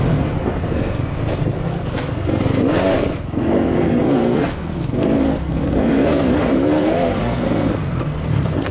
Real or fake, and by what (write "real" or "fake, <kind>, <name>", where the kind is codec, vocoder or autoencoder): fake, codec, SNAC